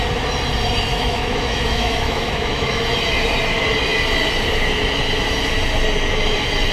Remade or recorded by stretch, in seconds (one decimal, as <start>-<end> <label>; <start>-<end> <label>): 0.0-0.9 recorded; 0.9-2.8 remade; 2.8-6.7 recorded

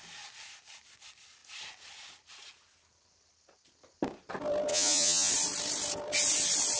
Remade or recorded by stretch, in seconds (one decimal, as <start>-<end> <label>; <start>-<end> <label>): 0.0-4.7 recorded; 4.7-5.3 remade; 5.3-6.8 recorded